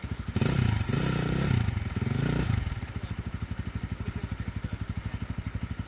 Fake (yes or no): no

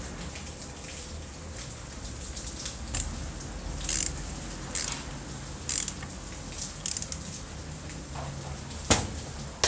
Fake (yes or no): no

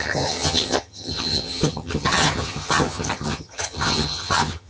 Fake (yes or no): yes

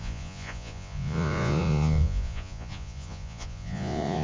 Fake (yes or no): yes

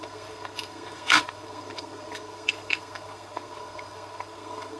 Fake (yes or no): yes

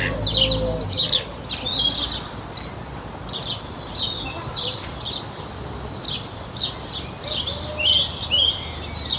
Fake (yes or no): no